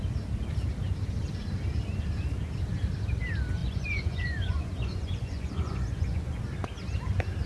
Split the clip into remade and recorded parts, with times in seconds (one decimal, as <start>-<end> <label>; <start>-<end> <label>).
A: 0.0-3.6 recorded; 3.6-6.4 remade; 6.4-7.5 recorded